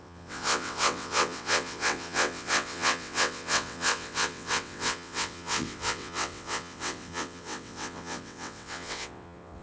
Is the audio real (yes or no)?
no